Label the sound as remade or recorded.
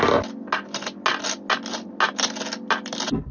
recorded